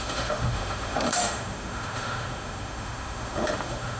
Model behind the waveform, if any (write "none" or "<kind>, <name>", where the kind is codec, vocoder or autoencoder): autoencoder, DAC-VAE